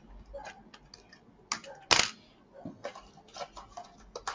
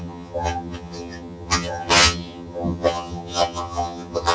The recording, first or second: first